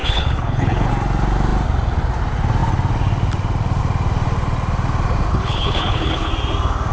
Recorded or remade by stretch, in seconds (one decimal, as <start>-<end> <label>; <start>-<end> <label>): 0.0-0.9 remade; 0.9-5.3 recorded; 5.3-6.3 remade; 6.3-6.9 recorded